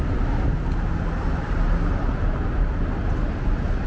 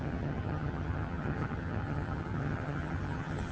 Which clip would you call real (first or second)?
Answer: first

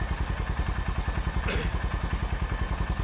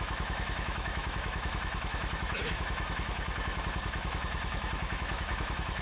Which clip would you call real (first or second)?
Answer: first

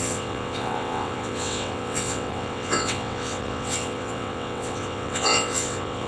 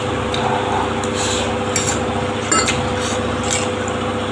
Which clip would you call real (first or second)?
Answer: second